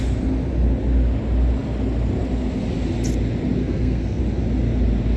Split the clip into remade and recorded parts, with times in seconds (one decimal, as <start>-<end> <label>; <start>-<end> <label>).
0.0-3.6 recorded; 3.6-4.2 remade; 4.2-5.2 recorded

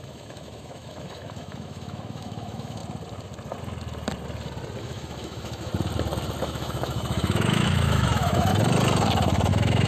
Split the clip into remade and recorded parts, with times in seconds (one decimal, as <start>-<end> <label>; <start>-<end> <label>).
0.0-2.8 remade; 2.8-4.8 recorded; 4.8-5.7 remade; 5.7-6.4 recorded; 6.4-8.5 remade; 8.5-9.5 recorded; 9.5-9.9 remade